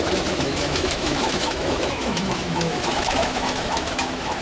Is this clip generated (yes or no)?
yes